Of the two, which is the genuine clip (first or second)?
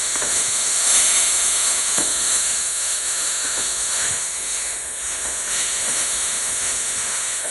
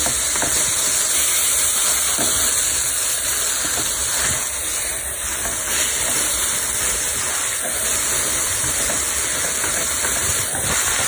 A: second